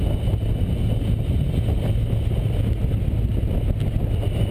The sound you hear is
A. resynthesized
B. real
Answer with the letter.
B